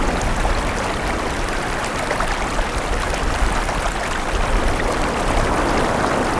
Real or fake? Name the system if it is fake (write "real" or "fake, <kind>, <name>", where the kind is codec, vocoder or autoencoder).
real